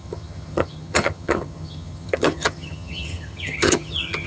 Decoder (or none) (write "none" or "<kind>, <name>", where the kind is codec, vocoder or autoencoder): vocoder, HiFi-GAN